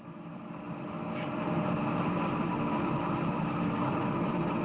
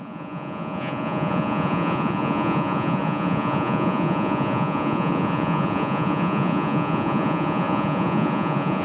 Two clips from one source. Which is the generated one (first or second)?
second